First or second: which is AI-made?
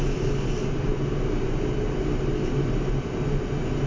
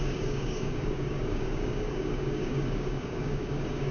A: second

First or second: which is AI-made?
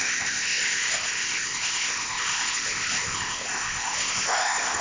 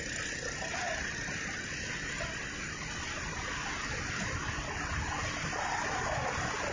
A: first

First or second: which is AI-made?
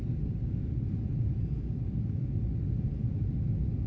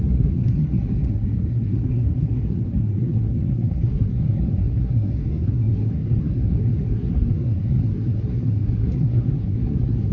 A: second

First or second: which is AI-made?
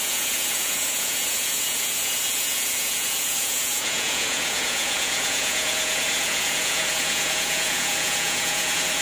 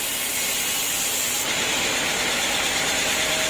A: first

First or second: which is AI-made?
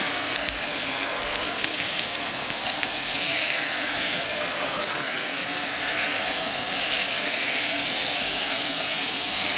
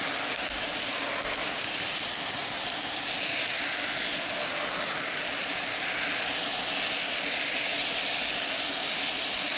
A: first